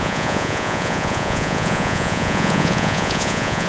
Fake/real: fake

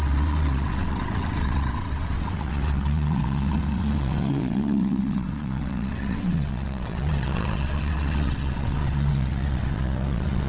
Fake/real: fake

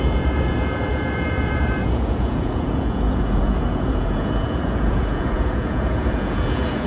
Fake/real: fake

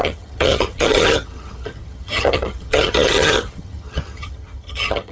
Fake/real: fake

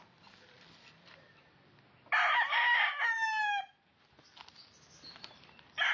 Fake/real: real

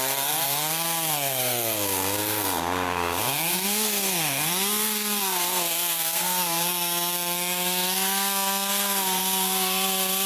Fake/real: fake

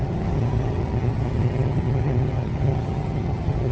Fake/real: fake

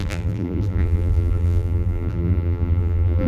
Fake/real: fake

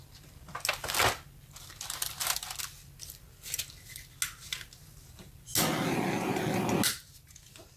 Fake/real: real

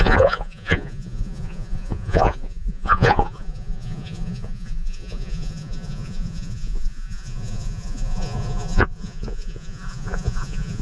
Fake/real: fake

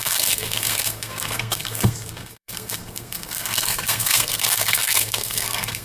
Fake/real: fake